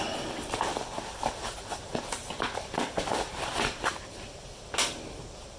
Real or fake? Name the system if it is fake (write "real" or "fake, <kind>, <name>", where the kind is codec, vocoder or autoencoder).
real